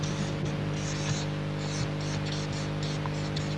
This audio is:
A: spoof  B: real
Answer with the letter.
B